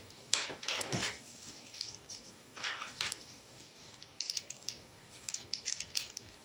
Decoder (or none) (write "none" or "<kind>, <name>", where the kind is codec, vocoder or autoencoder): codec, DAC